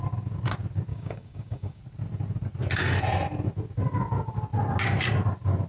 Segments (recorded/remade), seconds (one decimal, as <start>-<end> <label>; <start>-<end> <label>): 0.0-0.9 recorded; 0.9-1.8 remade; 1.8-5.7 recorded